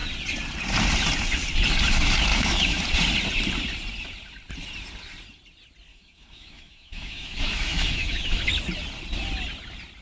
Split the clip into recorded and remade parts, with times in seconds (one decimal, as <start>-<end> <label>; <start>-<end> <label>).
0.0-2.3 recorded; 2.3-2.8 remade; 2.8-5.9 recorded; 5.9-8.5 remade; 8.5-10.0 recorded